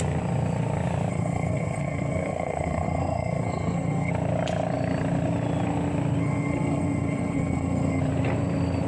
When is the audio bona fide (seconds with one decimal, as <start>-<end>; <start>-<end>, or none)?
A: 0.0-1.1; 4.1-6.2; 8.0-8.9